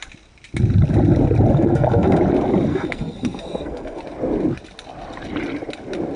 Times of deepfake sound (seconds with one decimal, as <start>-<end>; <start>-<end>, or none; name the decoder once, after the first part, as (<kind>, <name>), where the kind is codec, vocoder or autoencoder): 1.5-2.2 (codec, SNAC); 2.7-4.0